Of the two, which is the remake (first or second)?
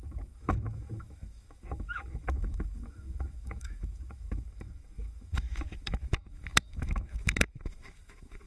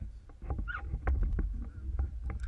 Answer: first